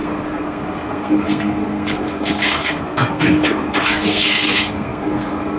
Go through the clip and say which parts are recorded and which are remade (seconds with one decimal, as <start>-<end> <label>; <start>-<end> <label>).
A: 0.0-5.6 remade